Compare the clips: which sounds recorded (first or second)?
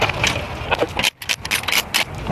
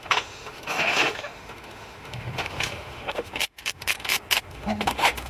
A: first